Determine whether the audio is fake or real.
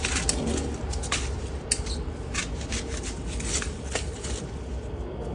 real